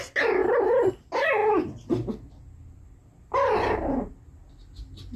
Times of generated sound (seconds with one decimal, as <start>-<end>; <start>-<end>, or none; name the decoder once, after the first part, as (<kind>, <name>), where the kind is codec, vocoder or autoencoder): none